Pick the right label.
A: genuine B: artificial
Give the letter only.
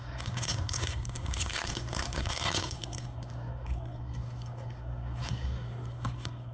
B